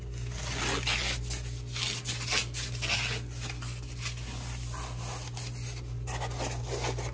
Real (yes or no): yes